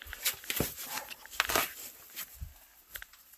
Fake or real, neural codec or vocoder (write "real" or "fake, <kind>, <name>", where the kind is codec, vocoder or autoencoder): real